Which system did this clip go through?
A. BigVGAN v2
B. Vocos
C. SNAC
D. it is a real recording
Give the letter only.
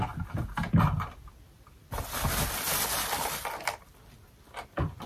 D